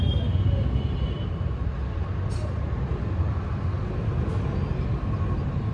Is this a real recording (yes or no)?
yes